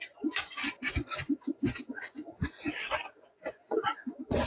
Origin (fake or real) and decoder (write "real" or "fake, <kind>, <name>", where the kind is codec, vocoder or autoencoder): fake, vocoder, Vocos